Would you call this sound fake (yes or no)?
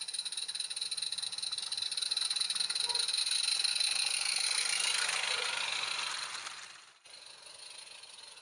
no